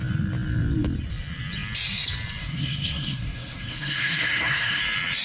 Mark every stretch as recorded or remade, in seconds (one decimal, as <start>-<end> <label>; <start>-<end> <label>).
0.0-2.4 recorded; 2.4-4.8 remade; 4.8-5.2 recorded